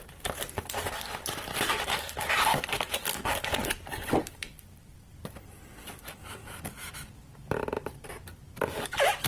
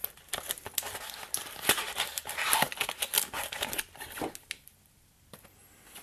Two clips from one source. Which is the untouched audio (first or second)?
second